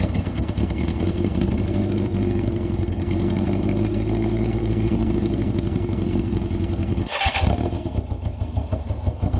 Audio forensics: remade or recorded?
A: remade